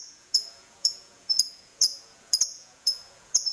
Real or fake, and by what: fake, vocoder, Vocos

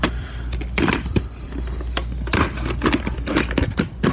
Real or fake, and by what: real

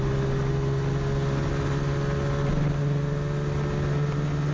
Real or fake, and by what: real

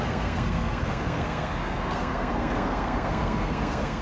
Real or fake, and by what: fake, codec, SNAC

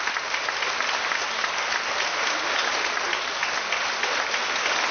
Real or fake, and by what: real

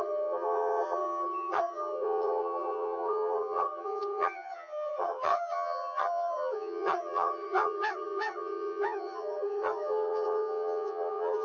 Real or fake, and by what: fake, vocoder, HiFi-GAN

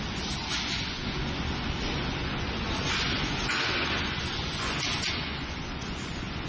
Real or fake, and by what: fake, vocoder, Vocos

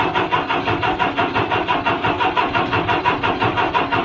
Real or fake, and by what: fake, vocoder, BigVGAN v2